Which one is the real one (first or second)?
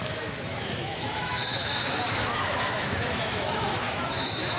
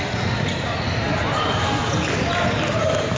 second